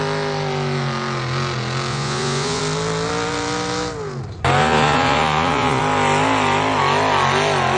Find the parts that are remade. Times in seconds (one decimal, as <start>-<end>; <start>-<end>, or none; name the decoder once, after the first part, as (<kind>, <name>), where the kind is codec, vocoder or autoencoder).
1.9-2.6 (vocoder, Vocos); 4.6-5.8